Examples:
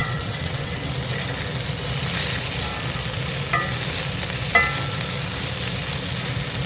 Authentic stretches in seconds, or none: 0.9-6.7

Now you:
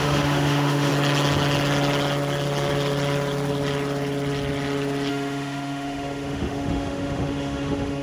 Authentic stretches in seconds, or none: 0.9-5.1

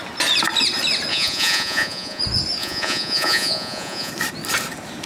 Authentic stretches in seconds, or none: 0.0-1.1; 2.2-2.6; 4.1-5.1

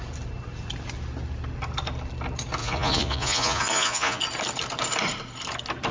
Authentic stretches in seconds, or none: 0.0-2.6; 4.2-5.9

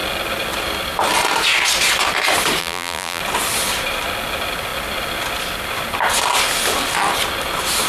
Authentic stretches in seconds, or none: 0.0-2.6; 3.2-7.9